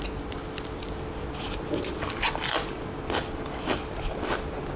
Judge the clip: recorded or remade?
recorded